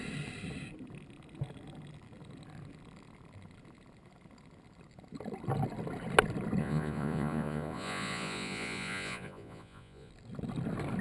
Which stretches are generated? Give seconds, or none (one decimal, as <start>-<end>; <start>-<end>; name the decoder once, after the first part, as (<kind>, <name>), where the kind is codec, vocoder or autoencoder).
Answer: 6.6-10.1 (vocoder, Vocos)